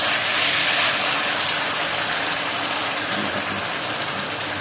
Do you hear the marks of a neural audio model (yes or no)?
no